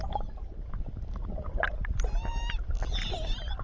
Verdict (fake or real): real